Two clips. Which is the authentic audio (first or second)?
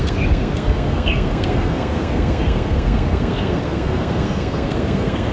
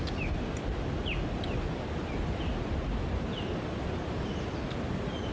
second